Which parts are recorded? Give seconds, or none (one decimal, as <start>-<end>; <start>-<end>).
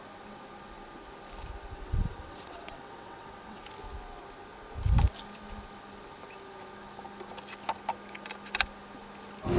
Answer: 0.0-1.7; 3.6-9.6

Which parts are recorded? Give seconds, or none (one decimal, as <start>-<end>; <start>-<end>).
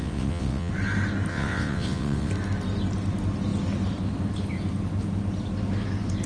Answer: 0.7-1.3; 2.3-6.3